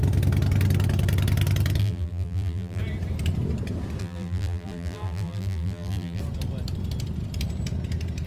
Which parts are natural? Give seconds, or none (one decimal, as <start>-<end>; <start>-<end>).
0.0-1.8; 2.8-4.0; 6.2-8.3